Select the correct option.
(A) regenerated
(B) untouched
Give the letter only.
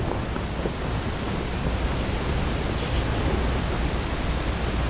B